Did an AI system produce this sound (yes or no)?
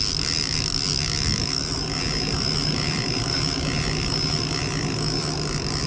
no